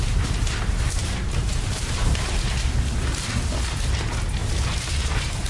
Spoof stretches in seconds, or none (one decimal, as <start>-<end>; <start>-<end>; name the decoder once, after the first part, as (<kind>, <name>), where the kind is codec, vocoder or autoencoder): 1.0-2.2 (vocoder, BigVGAN v2); 4.4-4.9